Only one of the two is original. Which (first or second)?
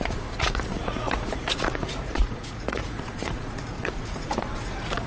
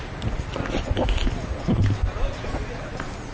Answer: second